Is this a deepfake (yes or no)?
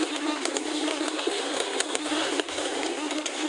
yes